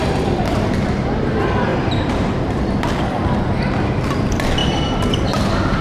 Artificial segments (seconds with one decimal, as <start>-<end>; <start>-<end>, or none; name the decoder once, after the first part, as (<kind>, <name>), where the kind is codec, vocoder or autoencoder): 1.7-2.3 (vocoder, BigVGAN v2); 4.6-5.8